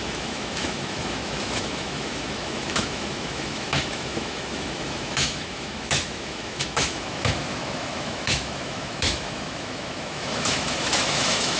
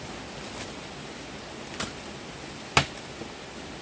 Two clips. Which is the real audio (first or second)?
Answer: second